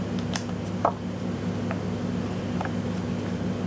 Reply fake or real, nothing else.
real